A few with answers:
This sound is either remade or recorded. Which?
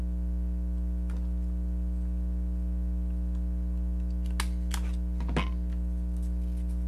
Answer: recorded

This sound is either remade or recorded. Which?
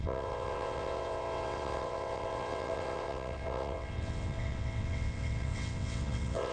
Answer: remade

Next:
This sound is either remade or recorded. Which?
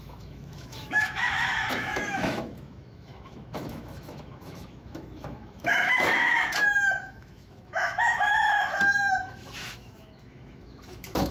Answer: remade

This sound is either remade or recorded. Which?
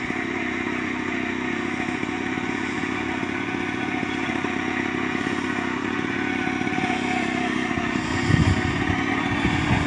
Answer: remade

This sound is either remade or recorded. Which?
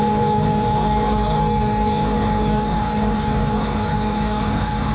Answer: remade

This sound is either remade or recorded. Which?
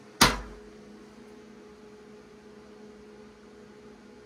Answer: recorded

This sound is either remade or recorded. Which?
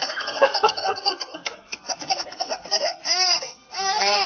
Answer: remade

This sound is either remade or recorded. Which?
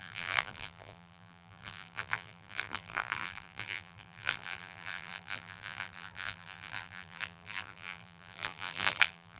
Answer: remade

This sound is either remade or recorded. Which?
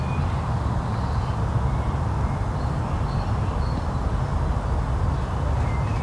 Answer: recorded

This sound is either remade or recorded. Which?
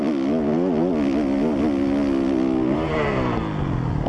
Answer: recorded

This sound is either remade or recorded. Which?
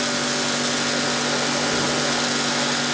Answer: recorded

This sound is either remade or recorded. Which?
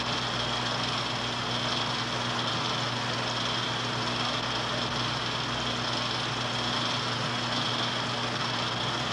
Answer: recorded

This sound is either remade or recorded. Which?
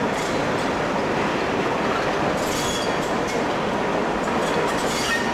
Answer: recorded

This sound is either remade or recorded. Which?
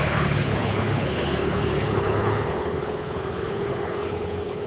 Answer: remade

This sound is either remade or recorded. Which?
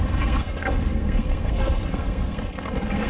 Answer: remade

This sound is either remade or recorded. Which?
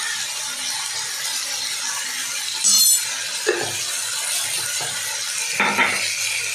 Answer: recorded